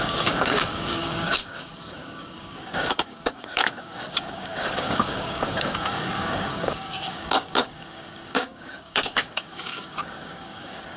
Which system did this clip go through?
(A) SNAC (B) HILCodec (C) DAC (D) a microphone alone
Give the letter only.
C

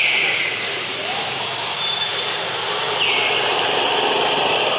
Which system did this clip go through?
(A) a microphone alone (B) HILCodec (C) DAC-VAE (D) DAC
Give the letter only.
A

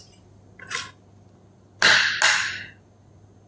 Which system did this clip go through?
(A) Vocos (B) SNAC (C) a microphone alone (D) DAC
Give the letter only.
C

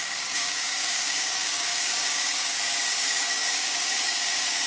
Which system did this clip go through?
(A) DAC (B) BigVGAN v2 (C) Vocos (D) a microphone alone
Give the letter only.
A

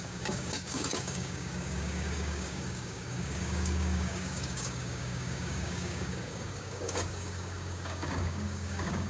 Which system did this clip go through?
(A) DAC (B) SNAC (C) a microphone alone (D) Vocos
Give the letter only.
A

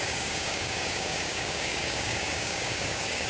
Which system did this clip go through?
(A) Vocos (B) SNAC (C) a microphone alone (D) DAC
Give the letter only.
D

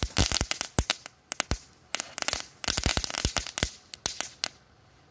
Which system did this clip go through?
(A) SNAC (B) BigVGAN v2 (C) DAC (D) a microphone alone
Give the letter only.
D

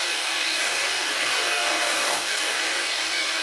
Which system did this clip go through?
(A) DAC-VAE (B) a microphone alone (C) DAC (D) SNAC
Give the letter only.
C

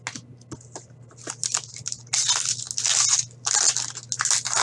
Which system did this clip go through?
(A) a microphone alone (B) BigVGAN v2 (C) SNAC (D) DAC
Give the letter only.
A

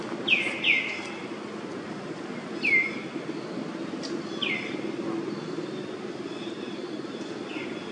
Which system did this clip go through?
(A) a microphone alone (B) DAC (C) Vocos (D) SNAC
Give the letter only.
A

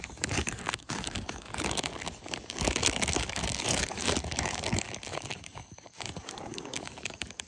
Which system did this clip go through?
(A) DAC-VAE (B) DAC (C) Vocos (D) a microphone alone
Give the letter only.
B